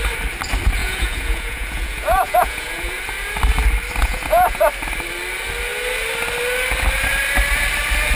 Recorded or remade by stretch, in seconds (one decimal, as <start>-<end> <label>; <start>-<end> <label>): 0.0-0.8 recorded; 0.8-3.0 remade; 3.0-4.0 recorded; 4.0-4.7 remade; 4.7-8.1 recorded

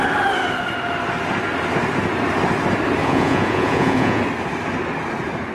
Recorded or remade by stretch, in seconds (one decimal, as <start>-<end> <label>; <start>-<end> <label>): 0.0-3.0 recorded; 3.0-4.2 remade; 4.2-5.5 recorded

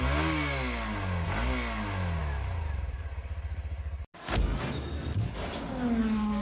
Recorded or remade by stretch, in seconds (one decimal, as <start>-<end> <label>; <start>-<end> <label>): 0.0-6.4 recorded

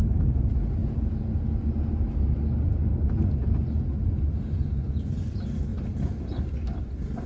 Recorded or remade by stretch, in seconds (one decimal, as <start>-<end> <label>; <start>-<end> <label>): 0.0-0.8 recorded; 0.8-1.3 remade; 1.3-7.3 recorded

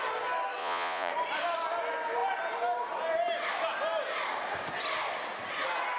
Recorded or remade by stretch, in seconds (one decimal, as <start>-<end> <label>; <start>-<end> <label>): 0.0-0.6 recorded; 0.6-1.1 remade; 1.1-6.0 recorded

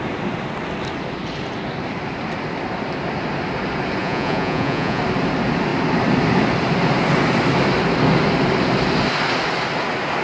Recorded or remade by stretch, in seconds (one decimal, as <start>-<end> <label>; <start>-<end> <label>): 0.0-4.0 recorded; 4.0-5.0 remade; 5.0-10.2 recorded